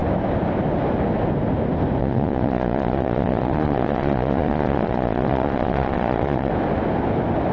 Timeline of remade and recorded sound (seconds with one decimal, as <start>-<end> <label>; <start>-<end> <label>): 0.0-2.0 recorded; 2.0-6.5 remade; 6.5-7.5 recorded

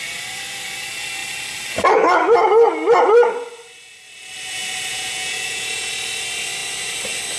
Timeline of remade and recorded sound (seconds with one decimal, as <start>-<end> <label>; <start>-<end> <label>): 0.0-4.9 recorded; 4.9-5.9 remade; 5.9-7.4 recorded

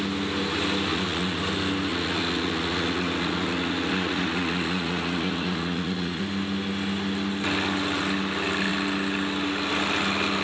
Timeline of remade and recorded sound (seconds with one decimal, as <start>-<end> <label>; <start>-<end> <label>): 0.0-0.9 recorded; 0.9-1.4 remade; 1.4-1.9 recorded; 1.9-6.2 remade; 6.2-10.4 recorded

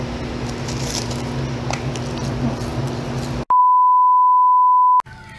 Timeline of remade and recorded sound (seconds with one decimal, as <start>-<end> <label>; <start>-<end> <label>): 0.0-5.4 recorded

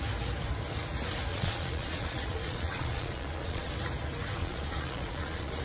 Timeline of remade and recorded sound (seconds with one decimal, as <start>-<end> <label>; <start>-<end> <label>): 0.0-1.3 recorded; 1.3-3.7 remade; 3.7-4.4 recorded; 4.4-5.6 remade

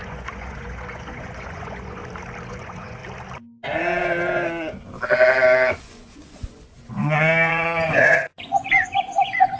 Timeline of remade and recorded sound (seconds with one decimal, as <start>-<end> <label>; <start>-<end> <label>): 0.0-2.0 remade; 2.0-2.5 recorded; 2.5-3.0 remade; 3.0-5.7 recorded; 5.7-9.6 remade

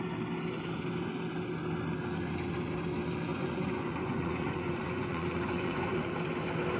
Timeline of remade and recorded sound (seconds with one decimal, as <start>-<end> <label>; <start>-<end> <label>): 0.0-3.3 recorded; 3.3-6.1 remade; 6.1-6.8 recorded